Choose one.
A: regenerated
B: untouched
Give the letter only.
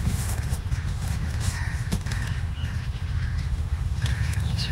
A